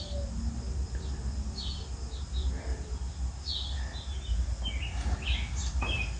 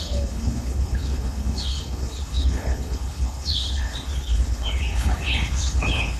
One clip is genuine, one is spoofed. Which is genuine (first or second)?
first